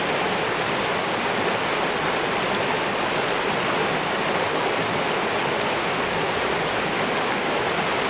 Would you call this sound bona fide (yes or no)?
yes